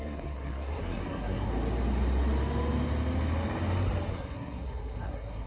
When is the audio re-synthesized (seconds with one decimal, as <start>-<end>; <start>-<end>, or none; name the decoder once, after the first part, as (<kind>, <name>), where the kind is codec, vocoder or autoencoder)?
0.0-1.5 (codec, SNAC); 4.1-5.5